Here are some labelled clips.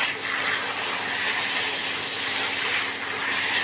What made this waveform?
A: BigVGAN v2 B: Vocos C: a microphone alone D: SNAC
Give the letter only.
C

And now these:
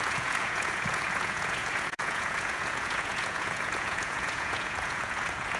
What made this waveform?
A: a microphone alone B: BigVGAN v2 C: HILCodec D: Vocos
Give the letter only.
D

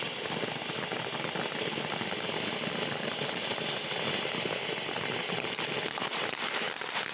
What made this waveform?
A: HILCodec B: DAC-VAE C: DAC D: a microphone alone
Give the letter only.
D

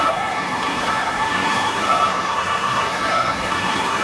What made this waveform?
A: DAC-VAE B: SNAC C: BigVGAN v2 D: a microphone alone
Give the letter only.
B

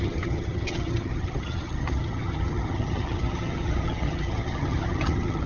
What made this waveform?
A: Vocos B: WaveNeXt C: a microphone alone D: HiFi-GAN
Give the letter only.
D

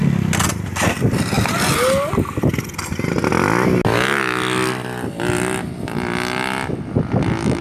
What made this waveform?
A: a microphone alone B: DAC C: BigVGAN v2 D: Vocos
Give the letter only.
A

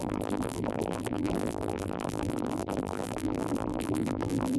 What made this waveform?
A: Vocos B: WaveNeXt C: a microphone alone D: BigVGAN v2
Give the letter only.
D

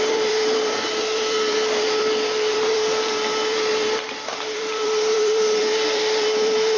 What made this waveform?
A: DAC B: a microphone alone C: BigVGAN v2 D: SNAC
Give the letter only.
C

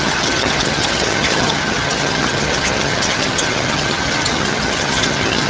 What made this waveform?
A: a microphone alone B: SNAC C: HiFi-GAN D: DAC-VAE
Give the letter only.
C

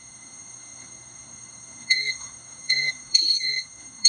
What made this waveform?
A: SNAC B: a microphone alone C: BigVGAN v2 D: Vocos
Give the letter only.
A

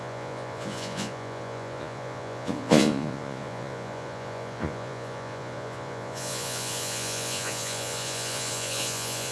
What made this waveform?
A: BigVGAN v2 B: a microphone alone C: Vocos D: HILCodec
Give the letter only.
C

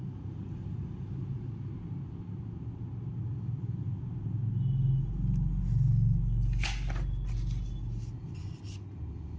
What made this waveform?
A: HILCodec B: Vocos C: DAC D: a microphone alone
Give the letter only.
D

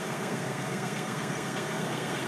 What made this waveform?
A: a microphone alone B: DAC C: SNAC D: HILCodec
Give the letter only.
C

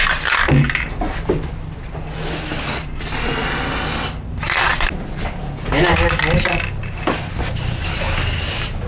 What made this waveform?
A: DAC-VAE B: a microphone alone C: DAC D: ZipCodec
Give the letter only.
B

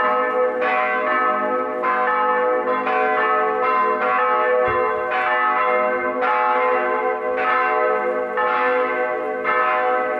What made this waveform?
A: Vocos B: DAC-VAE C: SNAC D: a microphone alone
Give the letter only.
D